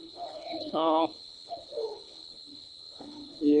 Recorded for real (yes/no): no